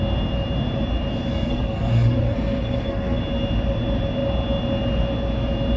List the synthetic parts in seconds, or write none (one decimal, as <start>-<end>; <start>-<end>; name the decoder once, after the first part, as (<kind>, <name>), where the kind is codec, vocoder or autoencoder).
1.3-3.2 (codec, SNAC)